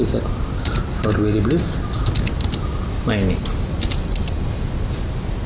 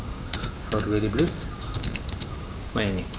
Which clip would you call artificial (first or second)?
second